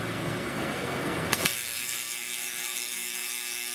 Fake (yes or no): yes